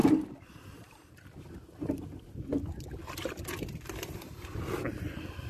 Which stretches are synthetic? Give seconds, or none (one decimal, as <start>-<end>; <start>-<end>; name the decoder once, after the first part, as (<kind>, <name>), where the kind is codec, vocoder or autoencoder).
none